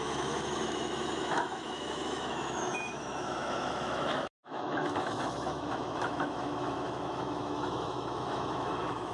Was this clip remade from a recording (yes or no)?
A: yes